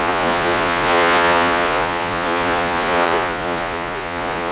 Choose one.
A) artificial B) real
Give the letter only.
A